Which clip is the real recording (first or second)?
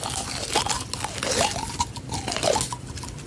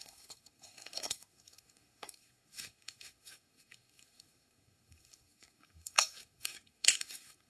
first